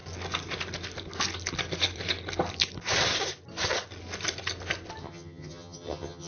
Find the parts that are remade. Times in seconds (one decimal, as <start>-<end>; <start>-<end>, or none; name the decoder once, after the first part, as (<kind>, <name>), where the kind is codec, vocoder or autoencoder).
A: 5.0-6.3 (vocoder, HiFi-GAN)